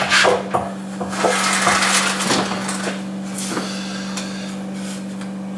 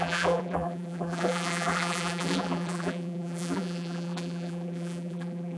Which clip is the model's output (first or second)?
second